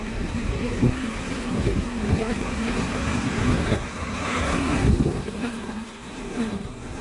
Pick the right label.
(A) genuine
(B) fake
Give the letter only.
B